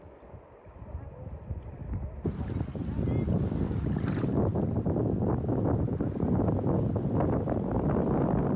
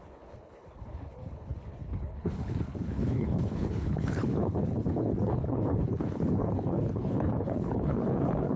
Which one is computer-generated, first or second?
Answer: second